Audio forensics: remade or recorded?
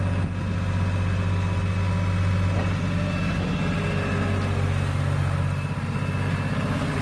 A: recorded